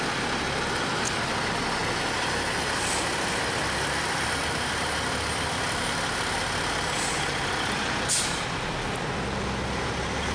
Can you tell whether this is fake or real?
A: real